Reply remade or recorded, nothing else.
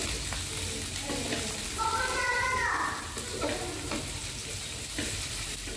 recorded